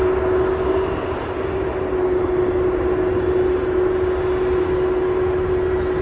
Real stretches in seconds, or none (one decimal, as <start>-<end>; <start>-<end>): 0.0-6.0